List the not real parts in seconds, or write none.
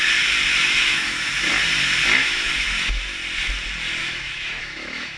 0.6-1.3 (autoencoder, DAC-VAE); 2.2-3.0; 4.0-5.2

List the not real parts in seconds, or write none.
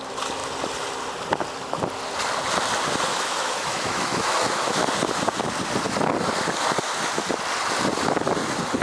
3.1-4.8 (autoencoder, DAC-VAE)